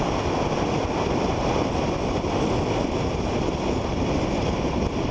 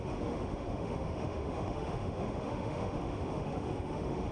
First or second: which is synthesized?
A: second